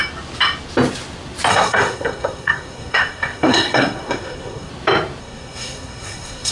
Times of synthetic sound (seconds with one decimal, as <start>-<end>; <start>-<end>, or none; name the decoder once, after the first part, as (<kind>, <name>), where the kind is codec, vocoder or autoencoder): 1.5-4.7 (codec, SNAC); 5.2-6.5